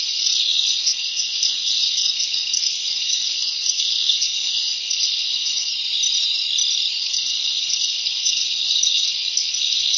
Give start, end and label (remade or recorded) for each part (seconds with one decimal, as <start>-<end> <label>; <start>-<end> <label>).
0.0-5.7 remade; 5.7-7.0 recorded; 7.0-10.0 remade